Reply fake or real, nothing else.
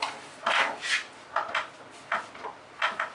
real